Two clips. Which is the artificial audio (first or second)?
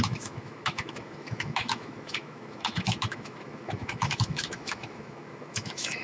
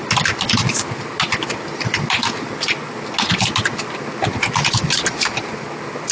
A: first